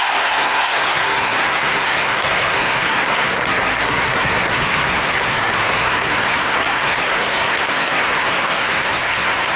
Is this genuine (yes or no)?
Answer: no